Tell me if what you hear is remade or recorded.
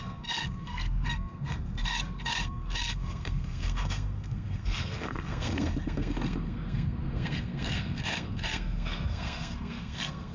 remade